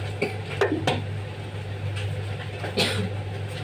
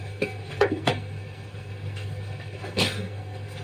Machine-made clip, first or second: second